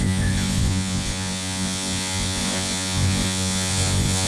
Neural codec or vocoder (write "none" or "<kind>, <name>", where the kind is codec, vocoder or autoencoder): vocoder, Vocos